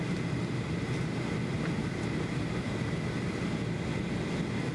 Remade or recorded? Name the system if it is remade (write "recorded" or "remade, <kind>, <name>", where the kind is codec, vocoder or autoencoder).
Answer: recorded